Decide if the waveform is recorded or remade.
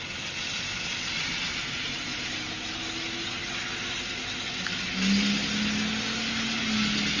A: recorded